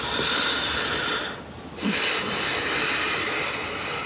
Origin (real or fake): real